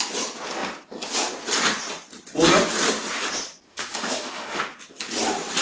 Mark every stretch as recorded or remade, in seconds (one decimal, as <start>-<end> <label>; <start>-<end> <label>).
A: 0.0-3.7 recorded; 3.7-4.6 remade; 4.6-5.6 recorded

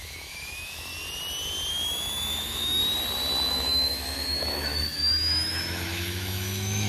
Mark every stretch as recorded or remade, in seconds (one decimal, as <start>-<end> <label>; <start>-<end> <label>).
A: 0.0-0.9 remade; 0.9-1.7 recorded; 1.7-2.8 remade; 2.8-3.5 recorded; 3.5-6.9 remade